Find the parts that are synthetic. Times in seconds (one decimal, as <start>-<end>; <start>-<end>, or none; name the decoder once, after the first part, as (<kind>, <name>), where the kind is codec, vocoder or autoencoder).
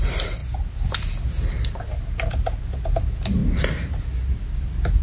none